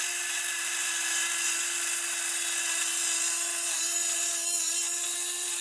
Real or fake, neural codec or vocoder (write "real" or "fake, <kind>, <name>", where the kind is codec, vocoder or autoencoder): real